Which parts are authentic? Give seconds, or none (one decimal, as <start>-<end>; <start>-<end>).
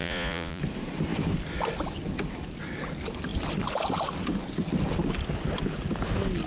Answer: 0.6-6.5